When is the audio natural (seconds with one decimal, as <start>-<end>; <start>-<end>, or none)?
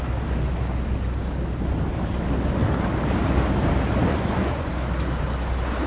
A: 0.0-4.1; 4.7-5.9